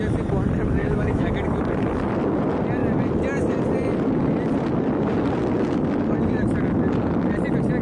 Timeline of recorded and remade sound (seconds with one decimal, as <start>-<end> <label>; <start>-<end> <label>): 0.0-0.8 recorded; 0.8-1.3 remade; 1.3-7.8 recorded

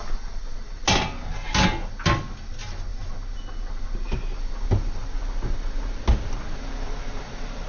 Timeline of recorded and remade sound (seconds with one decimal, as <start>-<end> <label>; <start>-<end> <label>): 0.0-7.7 recorded

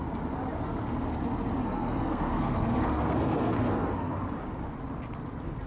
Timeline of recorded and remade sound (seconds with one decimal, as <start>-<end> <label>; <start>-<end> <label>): 0.0-1.6 recorded; 1.6-4.2 remade; 4.2-5.7 recorded

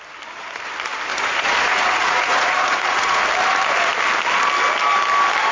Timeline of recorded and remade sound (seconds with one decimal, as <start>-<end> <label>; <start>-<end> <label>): 0.0-1.1 recorded; 1.1-3.2 remade; 3.2-5.5 recorded

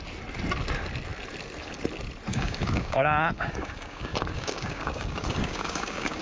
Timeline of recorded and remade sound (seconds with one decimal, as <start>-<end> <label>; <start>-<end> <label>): 0.0-2.3 recorded; 2.3-6.2 remade

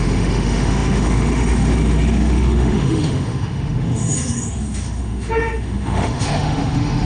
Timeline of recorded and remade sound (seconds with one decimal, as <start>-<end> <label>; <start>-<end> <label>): 0.0-7.0 remade

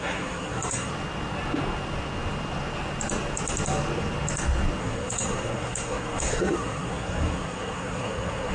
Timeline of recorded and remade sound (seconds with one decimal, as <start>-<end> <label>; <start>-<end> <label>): 0.0-0.9 remade; 0.9-4.8 recorded; 4.8-8.5 remade

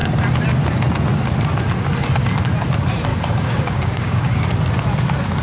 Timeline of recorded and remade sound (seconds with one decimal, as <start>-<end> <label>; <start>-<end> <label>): 0.0-3.1 recorded; 3.1-4.5 remade; 4.5-5.4 recorded